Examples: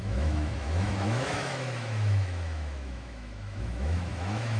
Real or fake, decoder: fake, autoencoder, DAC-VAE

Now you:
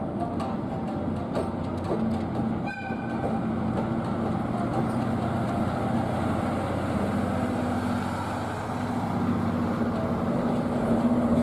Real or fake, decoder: real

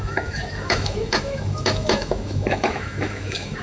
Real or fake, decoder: fake, autoencoder, DAC-VAE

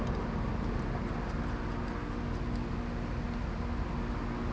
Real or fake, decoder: real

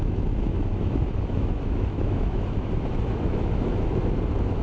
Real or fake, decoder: fake, autoencoder, DAC-VAE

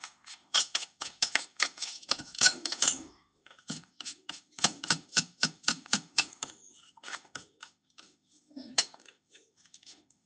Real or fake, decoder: fake, autoencoder, DAC-VAE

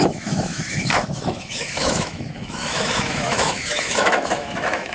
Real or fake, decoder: fake, autoencoder, DAC-VAE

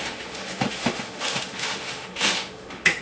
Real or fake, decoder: fake, autoencoder, DAC-VAE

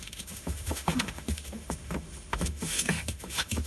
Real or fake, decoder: fake, autoencoder, DAC-VAE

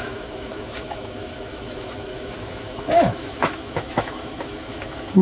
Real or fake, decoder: fake, autoencoder, DAC-VAE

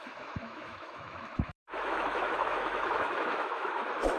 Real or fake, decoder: fake, autoencoder, DAC-VAE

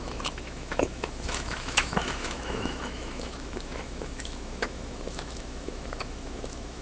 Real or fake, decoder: fake, autoencoder, DAC-VAE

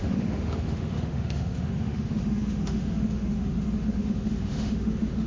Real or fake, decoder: fake, autoencoder, DAC-VAE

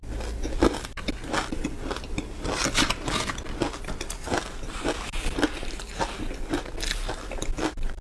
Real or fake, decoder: real